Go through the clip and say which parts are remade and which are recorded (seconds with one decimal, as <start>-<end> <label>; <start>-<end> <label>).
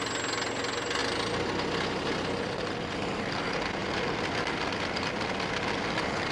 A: 0.0-6.3 recorded